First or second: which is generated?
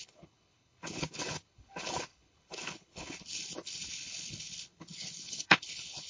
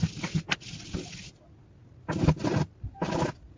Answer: first